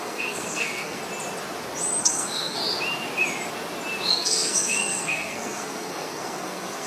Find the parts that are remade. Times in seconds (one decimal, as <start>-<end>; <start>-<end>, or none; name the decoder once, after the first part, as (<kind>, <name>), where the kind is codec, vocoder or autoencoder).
0.0-1.0 (codec, SNAC); 2.0-2.6; 4.1-6.9

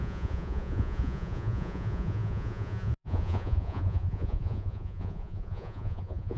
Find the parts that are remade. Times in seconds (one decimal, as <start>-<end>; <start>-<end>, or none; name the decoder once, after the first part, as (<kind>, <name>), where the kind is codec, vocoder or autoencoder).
0.0-6.4 (vocoder, Vocos)

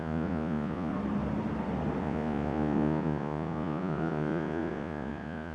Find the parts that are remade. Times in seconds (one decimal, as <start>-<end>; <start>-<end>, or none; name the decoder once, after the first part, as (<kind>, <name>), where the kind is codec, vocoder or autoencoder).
0.0-0.9 (vocoder, Vocos); 2.0-5.5

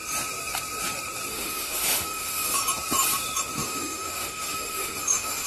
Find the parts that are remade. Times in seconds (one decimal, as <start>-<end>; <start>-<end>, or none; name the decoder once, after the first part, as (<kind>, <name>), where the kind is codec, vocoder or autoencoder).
1.3-2.6 (autoencoder, DAC-VAE); 3.6-5.5

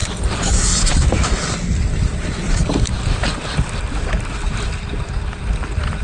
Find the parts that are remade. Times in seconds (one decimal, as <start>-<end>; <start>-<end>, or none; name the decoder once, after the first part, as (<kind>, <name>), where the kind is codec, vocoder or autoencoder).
none